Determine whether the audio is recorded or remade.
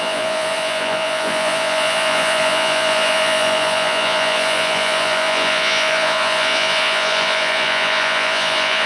remade